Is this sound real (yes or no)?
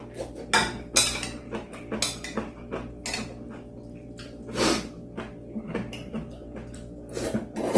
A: yes